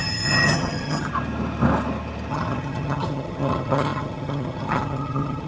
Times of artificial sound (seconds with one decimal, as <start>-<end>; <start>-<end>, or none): 0.0-1.1; 2.3-5.5